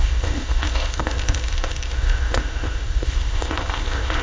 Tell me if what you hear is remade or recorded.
remade